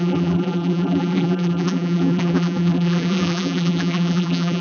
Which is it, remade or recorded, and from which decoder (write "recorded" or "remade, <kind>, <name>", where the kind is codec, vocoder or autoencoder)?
remade, vocoder, BigVGAN v2